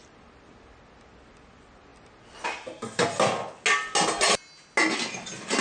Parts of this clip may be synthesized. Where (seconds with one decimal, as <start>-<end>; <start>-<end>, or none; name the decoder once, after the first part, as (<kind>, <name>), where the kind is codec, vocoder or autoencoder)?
none